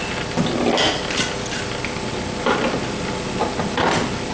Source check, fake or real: real